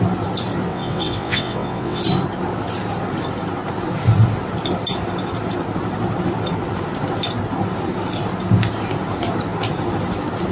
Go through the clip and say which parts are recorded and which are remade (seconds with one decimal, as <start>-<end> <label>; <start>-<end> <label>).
0.0-0.7 recorded; 0.7-2.0 remade; 2.0-10.5 recorded